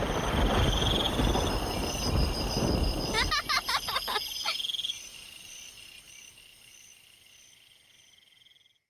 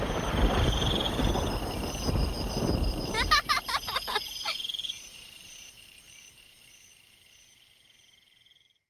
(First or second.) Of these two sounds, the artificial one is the second